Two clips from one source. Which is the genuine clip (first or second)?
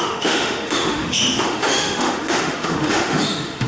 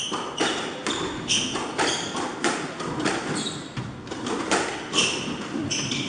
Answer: second